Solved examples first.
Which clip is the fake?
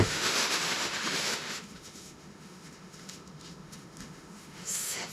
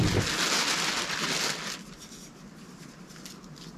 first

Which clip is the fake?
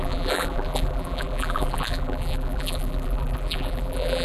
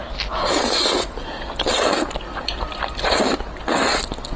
first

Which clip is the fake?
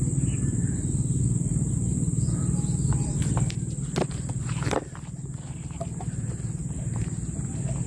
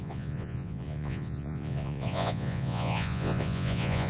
second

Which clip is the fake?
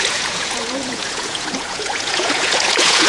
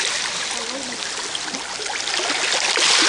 first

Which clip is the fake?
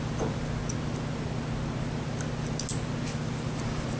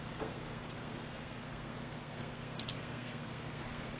second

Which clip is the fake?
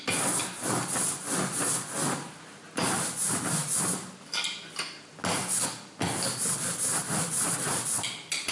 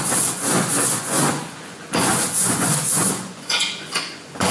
second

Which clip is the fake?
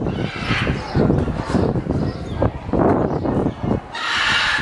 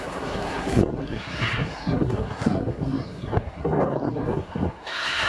second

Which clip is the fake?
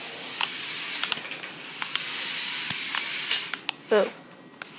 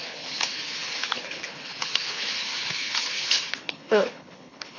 second